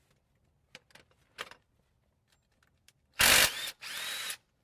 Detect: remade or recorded recorded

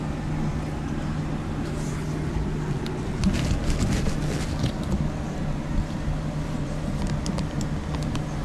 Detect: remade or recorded recorded